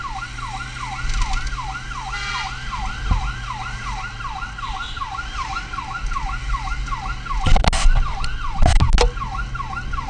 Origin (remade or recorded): recorded